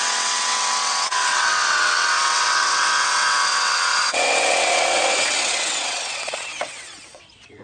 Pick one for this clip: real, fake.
fake